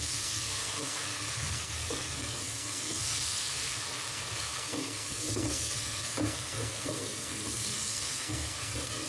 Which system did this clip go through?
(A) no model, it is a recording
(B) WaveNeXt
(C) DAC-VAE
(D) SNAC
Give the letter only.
D